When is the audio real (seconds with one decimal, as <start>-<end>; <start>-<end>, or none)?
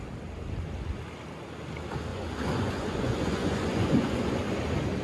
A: 0.0-2.1; 4.3-5.0